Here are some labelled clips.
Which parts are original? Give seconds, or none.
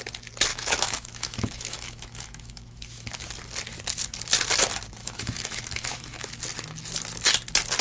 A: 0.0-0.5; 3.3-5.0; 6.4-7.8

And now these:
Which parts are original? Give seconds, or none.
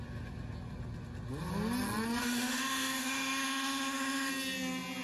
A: 0.0-2.2; 4.3-5.0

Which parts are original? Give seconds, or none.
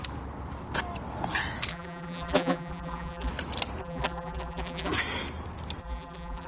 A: 0.0-1.7; 3.3-3.8; 4.9-5.8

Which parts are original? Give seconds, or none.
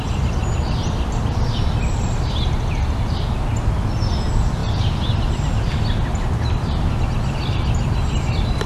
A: 0.0-8.7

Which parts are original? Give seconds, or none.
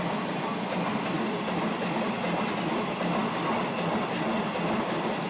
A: 0.0-5.3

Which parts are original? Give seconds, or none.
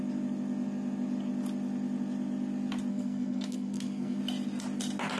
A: 0.0-2.9; 4.2-5.2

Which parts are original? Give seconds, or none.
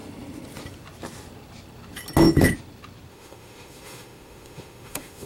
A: 0.0-3.1